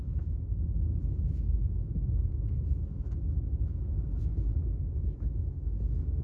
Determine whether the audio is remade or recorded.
remade